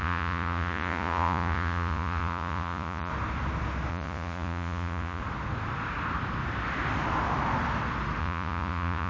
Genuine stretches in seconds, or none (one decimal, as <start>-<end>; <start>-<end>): 3.1-3.9; 5.2-8.2